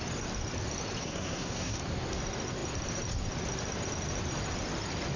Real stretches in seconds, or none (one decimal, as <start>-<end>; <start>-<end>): 0.0-1.0; 1.8-5.2